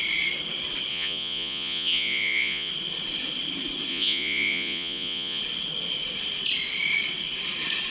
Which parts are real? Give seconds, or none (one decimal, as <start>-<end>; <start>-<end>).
0.0-0.9; 2.7-3.9; 5.4-7.9